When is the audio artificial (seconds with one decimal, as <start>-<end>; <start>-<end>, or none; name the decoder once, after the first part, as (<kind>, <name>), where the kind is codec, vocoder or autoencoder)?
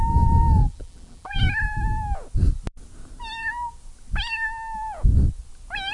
0.6-1.4 (vocoder, BigVGAN v2)